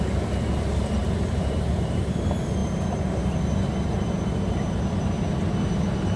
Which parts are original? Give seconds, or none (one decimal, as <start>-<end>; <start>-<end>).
0.0-1.0; 2.0-2.6; 3.4-6.2